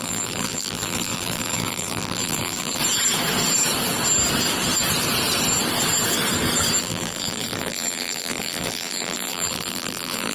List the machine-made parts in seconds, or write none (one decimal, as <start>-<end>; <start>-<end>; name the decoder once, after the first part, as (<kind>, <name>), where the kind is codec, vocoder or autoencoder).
0.0-2.8 (vocoder, BigVGAN v2); 6.8-10.3